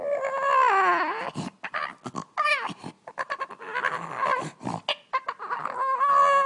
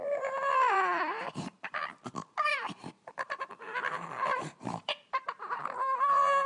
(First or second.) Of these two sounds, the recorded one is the first